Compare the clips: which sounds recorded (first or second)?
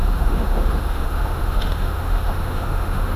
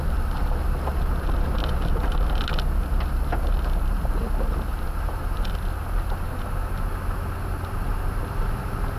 second